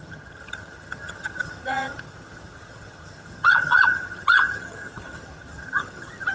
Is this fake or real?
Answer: fake